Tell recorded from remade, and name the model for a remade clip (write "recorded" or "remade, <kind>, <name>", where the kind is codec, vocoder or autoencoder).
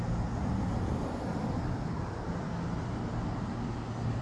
recorded